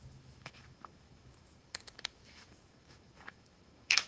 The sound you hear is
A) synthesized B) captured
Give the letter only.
A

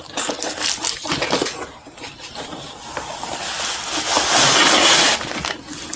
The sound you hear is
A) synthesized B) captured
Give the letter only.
B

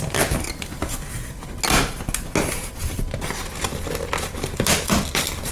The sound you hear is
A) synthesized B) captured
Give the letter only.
B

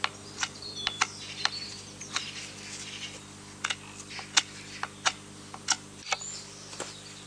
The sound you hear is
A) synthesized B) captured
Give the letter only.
B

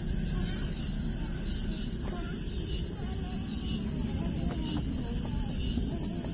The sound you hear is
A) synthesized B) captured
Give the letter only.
B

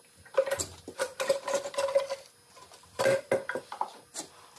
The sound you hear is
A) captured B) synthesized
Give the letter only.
A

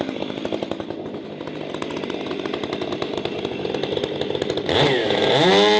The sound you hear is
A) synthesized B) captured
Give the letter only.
B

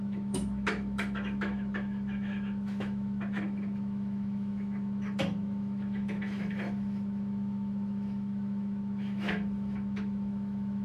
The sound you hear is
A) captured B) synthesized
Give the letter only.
B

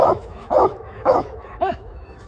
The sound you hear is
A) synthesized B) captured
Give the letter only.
A